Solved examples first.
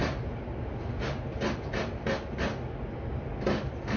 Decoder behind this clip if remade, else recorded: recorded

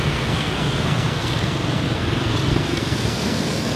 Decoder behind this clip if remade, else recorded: remade, codec, SNAC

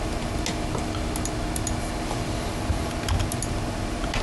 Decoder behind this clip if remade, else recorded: recorded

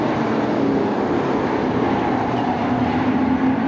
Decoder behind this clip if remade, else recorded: recorded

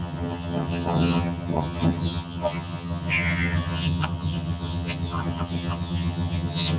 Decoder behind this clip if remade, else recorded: remade, vocoder, HiFi-GAN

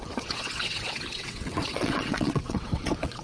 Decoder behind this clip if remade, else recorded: remade, vocoder, WaveNeXt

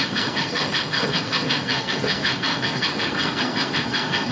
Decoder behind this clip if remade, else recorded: remade, codec, SNAC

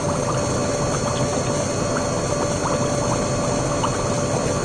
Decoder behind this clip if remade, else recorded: recorded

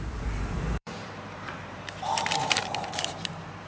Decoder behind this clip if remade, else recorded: remade, vocoder, BigVGAN v2